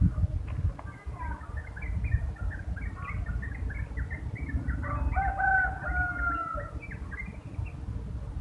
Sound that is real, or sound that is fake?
real